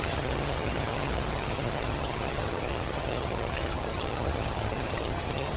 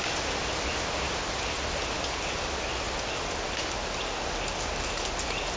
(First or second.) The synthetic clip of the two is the first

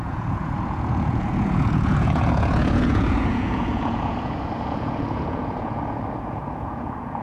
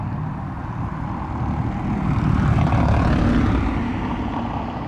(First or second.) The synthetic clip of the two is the first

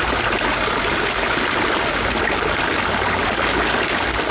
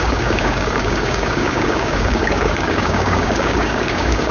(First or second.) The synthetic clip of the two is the second